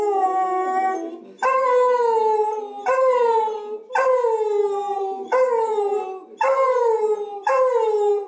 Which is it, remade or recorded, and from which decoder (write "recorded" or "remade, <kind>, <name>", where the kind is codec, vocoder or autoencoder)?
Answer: recorded